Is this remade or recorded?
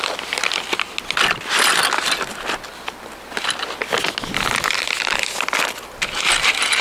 recorded